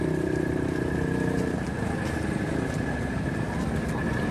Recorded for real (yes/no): yes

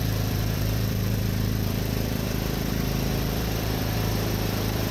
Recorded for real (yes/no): no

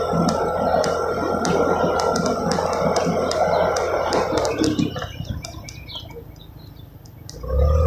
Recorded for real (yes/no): yes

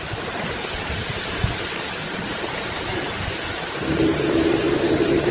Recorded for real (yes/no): no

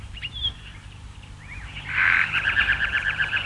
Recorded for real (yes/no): no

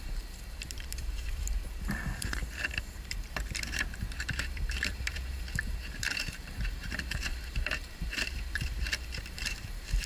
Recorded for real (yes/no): no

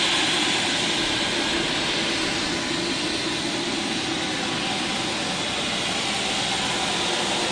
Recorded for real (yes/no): yes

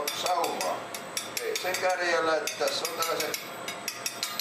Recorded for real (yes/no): yes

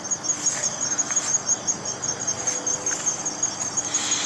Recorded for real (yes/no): yes